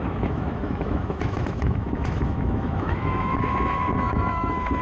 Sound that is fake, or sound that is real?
fake